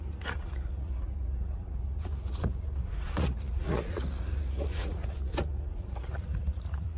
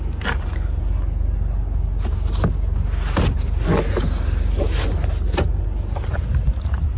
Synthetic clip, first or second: first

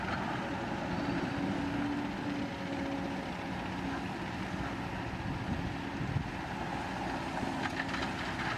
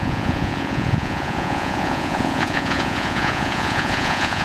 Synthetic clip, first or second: second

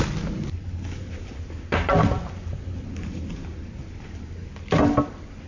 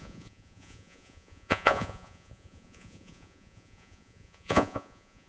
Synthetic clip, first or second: second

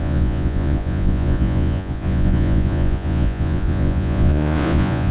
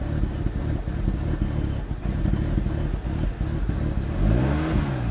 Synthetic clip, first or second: first